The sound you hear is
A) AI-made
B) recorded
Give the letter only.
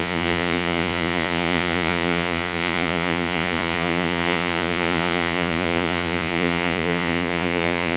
A